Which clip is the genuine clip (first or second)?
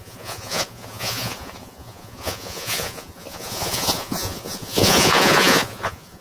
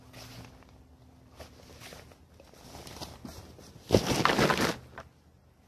second